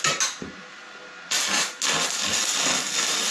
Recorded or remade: recorded